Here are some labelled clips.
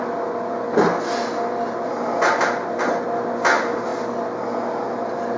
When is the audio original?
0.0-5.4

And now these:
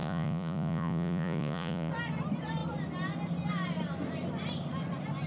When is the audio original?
1.9-5.3

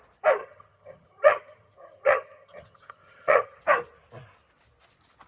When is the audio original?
0.0-0.4; 3.6-5.3

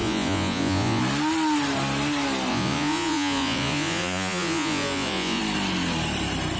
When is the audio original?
1.0-2.5; 5.4-6.6